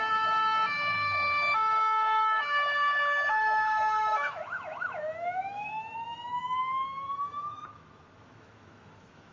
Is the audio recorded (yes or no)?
no